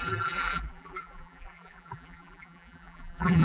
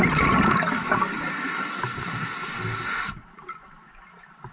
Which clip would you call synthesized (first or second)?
first